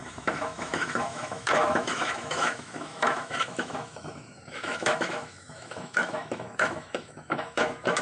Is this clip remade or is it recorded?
remade